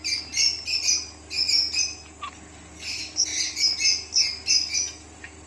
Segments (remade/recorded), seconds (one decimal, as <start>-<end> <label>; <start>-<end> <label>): 0.0-5.5 recorded